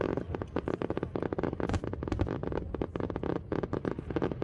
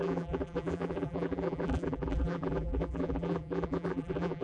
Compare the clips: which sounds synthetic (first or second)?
second